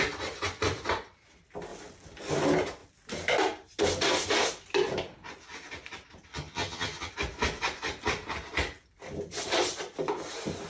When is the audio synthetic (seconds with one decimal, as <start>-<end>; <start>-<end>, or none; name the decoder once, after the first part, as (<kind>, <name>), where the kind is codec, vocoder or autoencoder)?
6.3-7.1 (vocoder, HiFi-GAN)